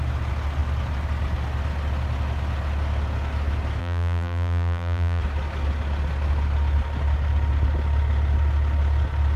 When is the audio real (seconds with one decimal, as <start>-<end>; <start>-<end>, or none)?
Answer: 0.0-3.8; 5.2-9.4